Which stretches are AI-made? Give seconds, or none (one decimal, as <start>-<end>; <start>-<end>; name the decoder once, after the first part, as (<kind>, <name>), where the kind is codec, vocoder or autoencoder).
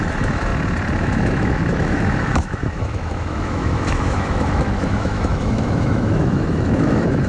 0.0-0.5 (autoencoder, DAC-VAE); 1.0-7.3